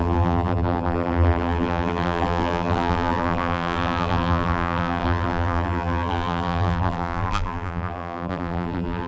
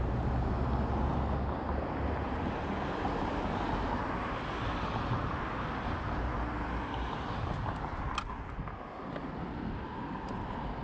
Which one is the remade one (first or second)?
first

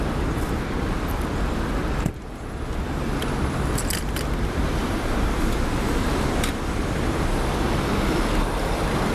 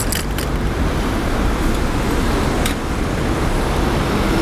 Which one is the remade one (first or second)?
first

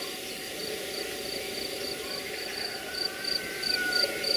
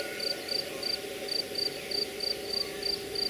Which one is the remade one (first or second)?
first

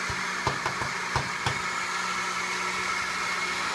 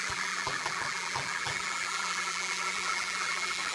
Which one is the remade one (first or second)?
second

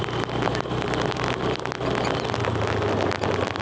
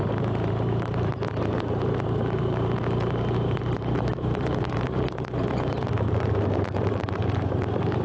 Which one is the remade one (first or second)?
second